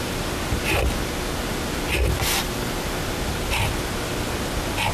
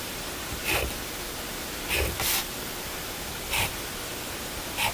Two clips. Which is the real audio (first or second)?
first